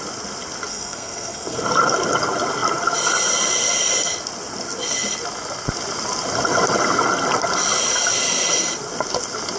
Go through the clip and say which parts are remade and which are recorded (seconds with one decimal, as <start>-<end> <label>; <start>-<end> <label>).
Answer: 0.0-0.7 recorded; 0.7-1.6 remade; 1.6-9.6 recorded